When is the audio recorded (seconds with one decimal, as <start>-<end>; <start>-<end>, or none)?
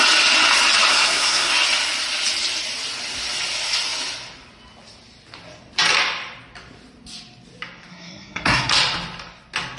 0.0-0.9; 1.5-7.9; 8.7-9.8